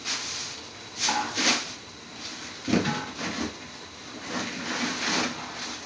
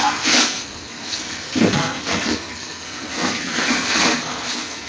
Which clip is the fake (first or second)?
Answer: second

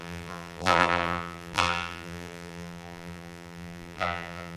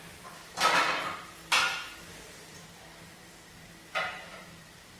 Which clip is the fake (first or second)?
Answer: first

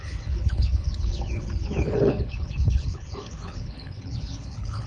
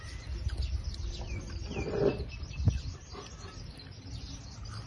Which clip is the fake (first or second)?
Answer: first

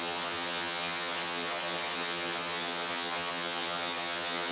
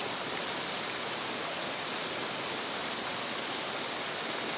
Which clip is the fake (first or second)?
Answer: first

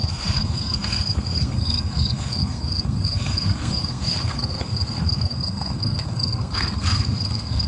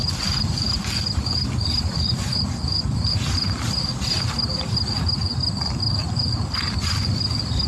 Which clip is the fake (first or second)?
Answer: first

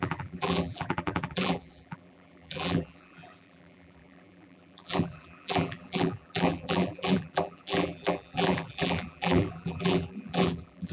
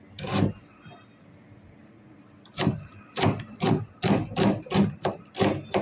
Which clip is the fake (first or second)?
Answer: first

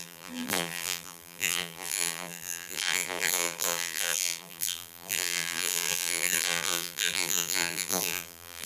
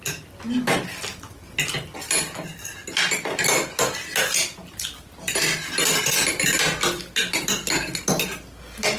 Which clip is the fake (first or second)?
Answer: first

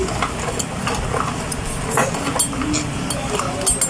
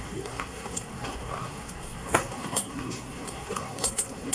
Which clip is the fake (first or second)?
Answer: second